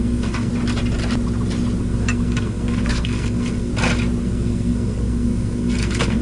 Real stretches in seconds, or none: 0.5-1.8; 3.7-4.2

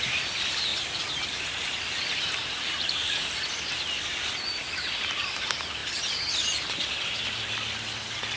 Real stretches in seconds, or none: 0.0-8.4

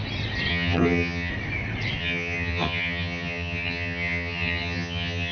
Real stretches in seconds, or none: 0.0-0.5; 1.3-2.0